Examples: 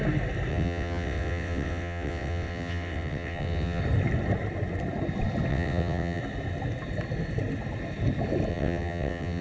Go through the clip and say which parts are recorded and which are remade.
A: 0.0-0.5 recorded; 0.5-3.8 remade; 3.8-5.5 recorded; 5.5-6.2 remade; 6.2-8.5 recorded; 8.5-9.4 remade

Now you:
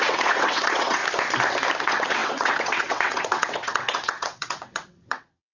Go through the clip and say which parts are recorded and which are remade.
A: 0.0-1.0 remade; 1.0-1.8 recorded; 1.8-5.5 remade

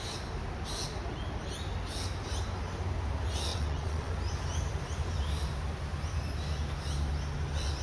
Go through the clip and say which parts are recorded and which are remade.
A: 0.0-3.5 recorded; 3.5-4.1 remade; 4.1-7.8 recorded

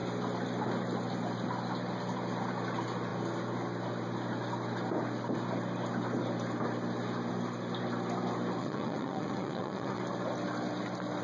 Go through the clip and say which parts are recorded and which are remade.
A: 0.0-8.6 recorded; 8.6-10.0 remade; 10.0-11.2 recorded

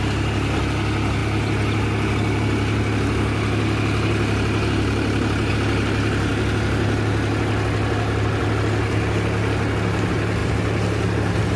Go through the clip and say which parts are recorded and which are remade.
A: 0.0-11.6 recorded

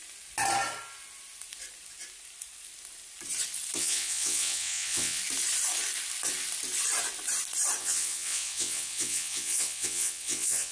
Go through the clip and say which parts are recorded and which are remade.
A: 0.0-3.8 recorded; 3.8-5.2 remade; 5.2-7.8 recorded; 7.8-10.7 remade

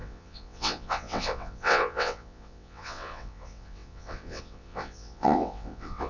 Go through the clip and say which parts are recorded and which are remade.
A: 0.0-6.1 remade

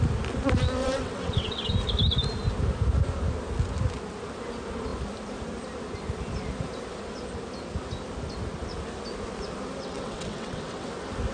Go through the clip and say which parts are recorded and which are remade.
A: 0.0-0.8 recorded; 0.8-1.7 remade; 1.7-9.8 recorded; 9.8-10.9 remade; 10.9-11.3 recorded